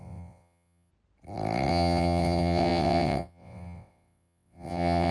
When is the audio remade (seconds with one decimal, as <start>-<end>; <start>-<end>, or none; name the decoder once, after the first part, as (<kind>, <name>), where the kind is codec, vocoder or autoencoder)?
0.0-0.9 (vocoder, WaveNeXt); 1.7-5.1

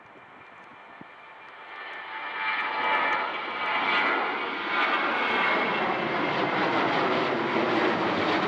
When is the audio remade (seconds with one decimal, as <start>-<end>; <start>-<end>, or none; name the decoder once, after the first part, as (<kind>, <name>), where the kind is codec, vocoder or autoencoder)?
none

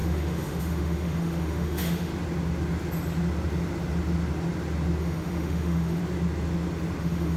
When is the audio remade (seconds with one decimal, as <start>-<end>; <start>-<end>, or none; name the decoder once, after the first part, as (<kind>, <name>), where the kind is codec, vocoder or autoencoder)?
0.0-2.1 (autoencoder, DAC-VAE); 5.0-6.0; 7.0-7.4